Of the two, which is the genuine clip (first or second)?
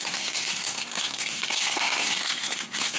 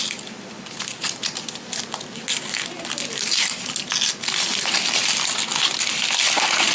second